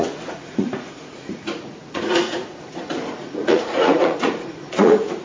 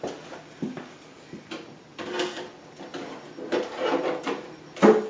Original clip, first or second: second